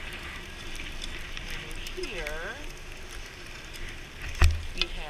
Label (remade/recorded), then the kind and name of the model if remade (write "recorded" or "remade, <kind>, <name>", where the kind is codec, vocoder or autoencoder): recorded